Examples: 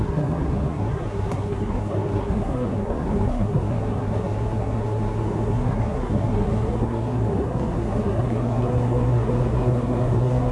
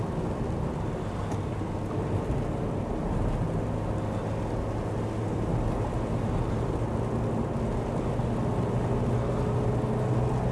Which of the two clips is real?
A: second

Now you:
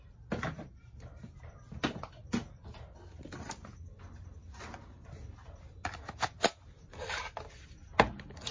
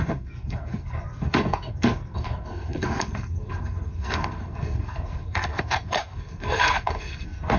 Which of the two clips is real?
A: first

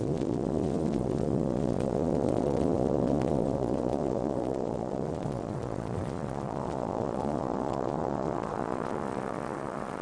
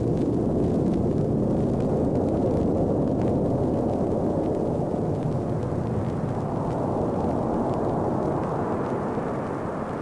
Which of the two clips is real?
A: second